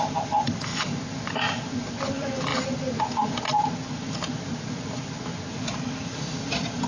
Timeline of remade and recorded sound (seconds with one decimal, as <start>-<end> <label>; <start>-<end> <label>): 0.0-0.7 remade; 0.7-2.0 recorded; 2.0-2.5 remade; 2.5-5.5 recorded; 5.5-6.9 remade

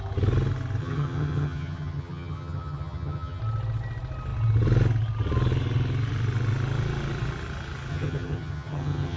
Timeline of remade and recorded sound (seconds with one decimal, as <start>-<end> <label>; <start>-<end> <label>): 0.0-0.8 recorded; 0.8-3.4 remade; 3.4-7.9 recorded; 7.9-9.2 remade

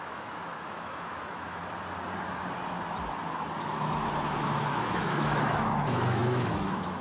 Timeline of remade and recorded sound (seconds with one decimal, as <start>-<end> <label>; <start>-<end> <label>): 0.0-1.6 remade; 1.6-4.7 recorded; 4.7-7.0 remade

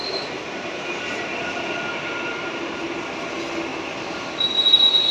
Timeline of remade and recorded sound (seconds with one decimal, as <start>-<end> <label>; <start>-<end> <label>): 0.0-0.7 remade; 0.7-1.3 recorded; 1.3-3.0 remade; 3.0-3.7 recorded; 3.7-4.3 remade; 4.3-5.1 recorded

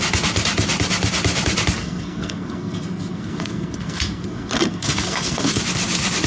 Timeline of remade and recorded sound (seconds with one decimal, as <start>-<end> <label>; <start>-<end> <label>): 0.0-1.8 recorded; 1.8-5.6 remade; 5.6-6.3 recorded

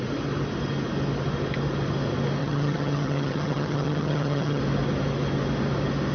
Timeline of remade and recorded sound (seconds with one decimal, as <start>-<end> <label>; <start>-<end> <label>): 0.0-2.4 recorded; 2.4-4.6 remade; 4.6-6.1 recorded